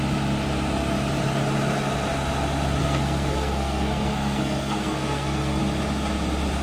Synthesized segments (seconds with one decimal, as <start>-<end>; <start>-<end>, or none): 2.8-5.6